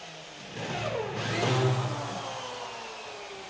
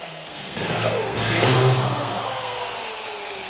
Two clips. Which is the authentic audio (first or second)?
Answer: first